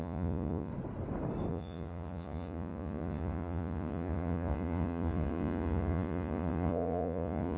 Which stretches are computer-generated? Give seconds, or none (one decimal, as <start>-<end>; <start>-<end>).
0.0-0.7; 1.5-7.6

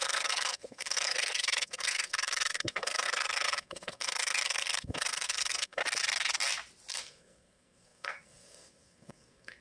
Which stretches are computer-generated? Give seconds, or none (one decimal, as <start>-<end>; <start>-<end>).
0.0-5.8; 6.9-9.6

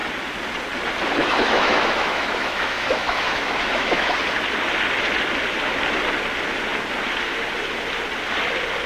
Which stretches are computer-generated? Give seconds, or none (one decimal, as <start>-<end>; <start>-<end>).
1.2-4.1